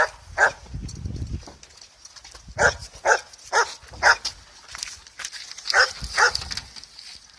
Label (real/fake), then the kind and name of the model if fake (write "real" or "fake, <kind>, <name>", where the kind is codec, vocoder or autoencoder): real